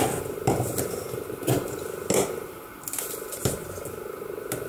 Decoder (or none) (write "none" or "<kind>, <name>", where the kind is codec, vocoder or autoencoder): none